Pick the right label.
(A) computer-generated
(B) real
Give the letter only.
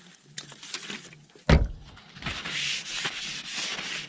B